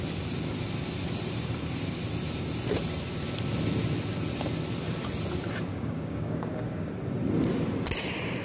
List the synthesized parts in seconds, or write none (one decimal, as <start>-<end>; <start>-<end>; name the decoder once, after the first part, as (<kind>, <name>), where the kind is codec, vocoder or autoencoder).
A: 5.7-6.9 (codec, DAC)